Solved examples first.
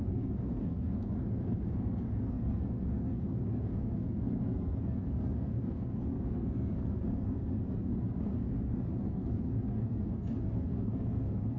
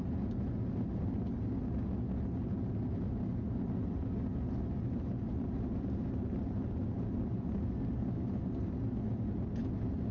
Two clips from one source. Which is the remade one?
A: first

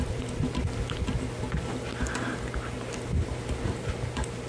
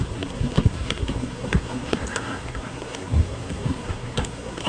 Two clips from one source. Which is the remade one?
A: second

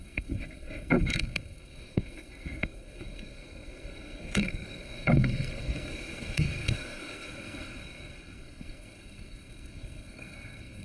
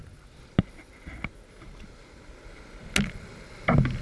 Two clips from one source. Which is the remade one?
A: first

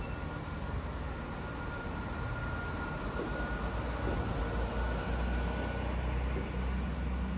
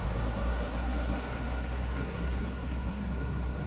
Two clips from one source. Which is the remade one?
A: second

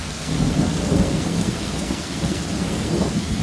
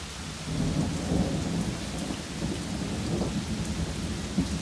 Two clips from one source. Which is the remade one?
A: first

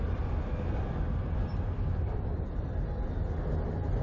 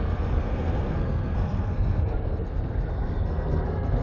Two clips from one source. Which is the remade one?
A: second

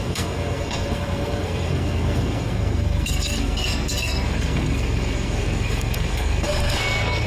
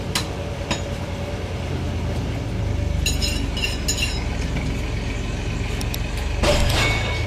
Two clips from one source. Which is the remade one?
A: first